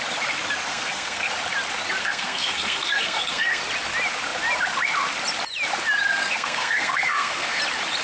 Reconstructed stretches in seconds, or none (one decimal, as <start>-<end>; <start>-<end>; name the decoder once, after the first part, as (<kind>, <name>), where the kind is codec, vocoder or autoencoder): 0.7-1.3 (codec, SNAC); 2.0-3.6; 6.1-7.6